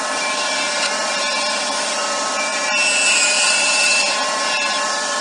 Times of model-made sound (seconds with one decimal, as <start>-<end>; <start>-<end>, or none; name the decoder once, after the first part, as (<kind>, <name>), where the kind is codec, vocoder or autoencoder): none